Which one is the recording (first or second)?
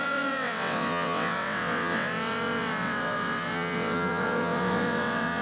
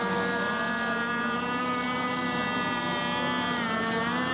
second